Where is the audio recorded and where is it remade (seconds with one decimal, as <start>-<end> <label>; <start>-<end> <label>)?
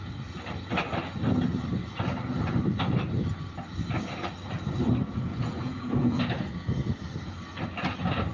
0.0-5.3 recorded; 5.3-6.2 remade; 6.2-8.3 recorded